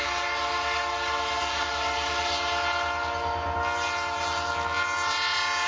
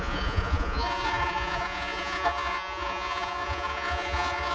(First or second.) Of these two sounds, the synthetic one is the second